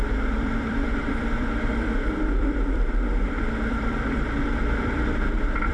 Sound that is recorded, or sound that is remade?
remade